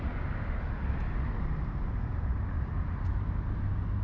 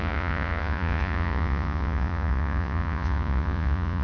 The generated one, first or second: second